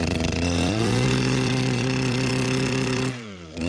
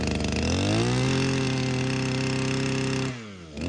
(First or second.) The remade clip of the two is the first